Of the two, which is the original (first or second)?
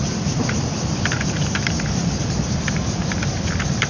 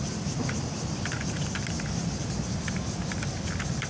second